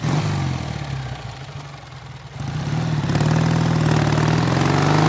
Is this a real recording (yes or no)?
yes